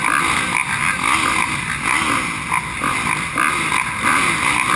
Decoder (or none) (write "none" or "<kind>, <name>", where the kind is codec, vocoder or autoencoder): none